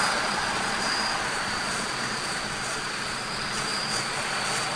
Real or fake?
fake